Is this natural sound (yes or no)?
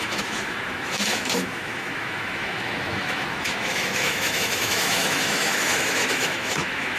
no